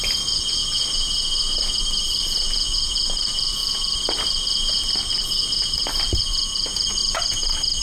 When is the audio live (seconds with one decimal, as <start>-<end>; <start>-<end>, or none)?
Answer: 0.6-1.8; 7.0-7.8